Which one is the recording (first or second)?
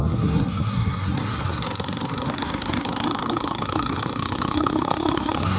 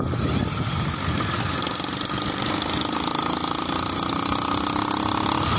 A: second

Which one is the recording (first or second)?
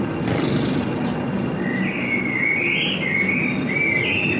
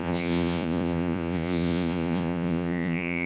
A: first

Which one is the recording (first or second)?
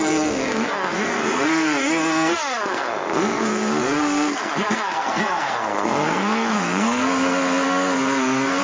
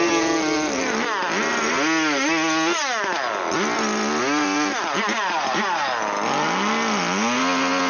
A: second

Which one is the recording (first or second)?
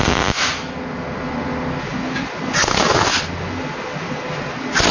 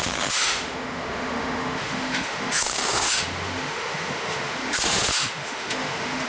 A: first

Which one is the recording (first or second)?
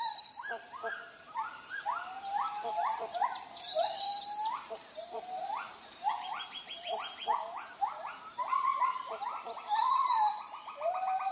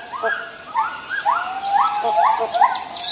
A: second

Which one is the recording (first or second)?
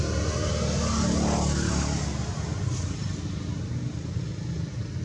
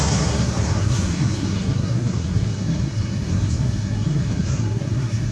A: first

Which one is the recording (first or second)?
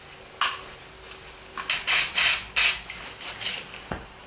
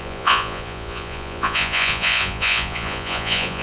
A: first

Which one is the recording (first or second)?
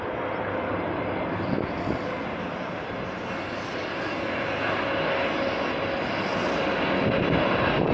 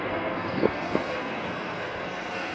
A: first